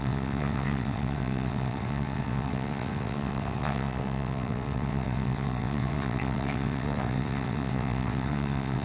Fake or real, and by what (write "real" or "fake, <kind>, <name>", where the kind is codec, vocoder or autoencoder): fake, vocoder, WaveNeXt